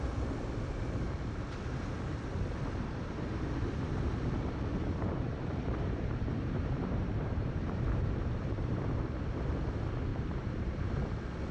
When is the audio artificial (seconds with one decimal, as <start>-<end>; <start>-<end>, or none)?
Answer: 4.7-8.8; 10.1-10.9